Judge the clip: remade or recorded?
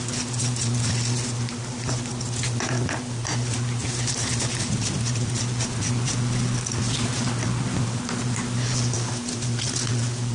recorded